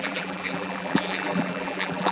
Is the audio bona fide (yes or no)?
no